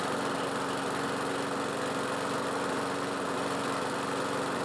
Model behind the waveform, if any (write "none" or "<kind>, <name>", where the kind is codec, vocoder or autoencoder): none